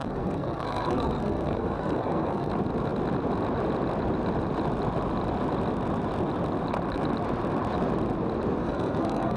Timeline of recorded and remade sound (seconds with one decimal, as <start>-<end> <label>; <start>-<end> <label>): 0.0-2.5 remade; 2.5-8.6 recorded; 8.6-9.4 remade